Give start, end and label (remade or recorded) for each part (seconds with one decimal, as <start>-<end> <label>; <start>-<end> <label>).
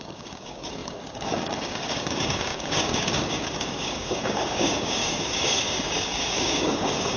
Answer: 0.0-7.2 remade